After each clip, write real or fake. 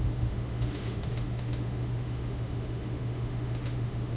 fake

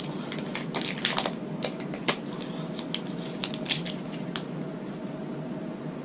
real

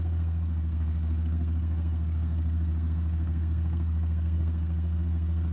fake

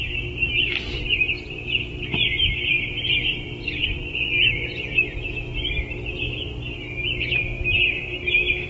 real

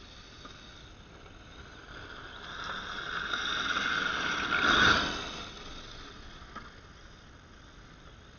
real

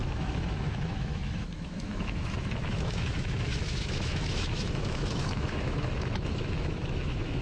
fake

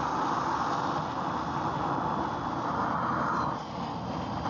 real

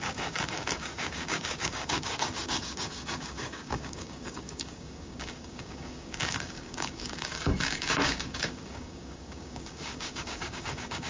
fake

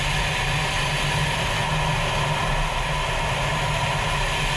real